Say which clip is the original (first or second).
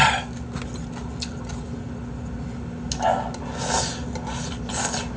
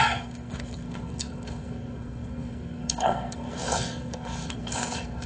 first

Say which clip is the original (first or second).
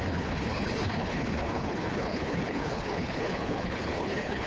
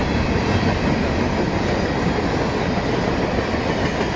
second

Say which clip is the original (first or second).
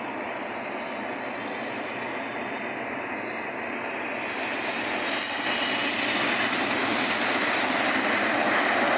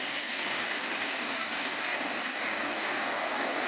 first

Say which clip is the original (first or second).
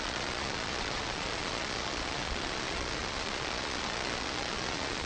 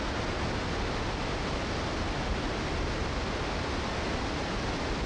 second